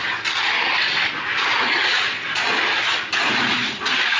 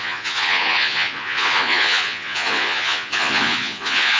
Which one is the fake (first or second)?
second